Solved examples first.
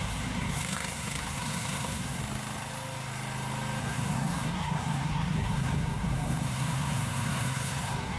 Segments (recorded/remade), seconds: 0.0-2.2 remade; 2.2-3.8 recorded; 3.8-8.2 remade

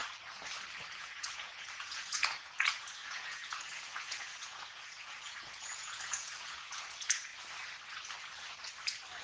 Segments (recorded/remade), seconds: 0.0-1.0 recorded; 1.0-7.3 remade; 7.3-9.2 recorded